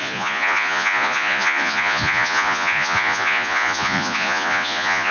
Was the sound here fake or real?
fake